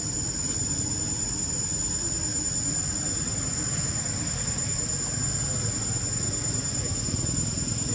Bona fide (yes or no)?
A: yes